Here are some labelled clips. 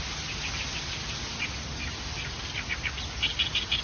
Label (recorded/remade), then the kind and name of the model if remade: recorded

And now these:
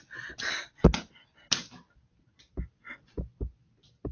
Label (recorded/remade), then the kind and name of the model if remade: recorded